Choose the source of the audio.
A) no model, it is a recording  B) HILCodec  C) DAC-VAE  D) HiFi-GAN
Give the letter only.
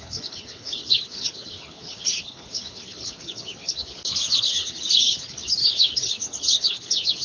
B